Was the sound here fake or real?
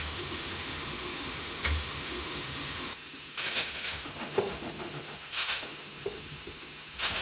fake